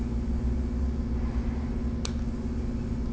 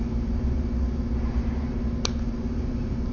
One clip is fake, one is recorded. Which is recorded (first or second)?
first